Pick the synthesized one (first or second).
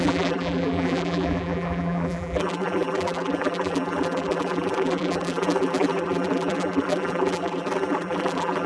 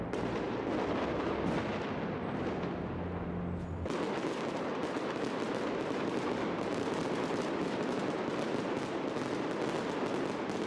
first